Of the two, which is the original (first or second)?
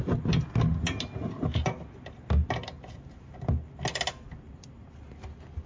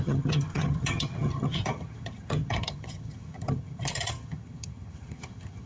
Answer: first